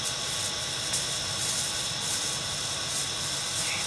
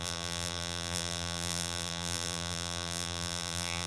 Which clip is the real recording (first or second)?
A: first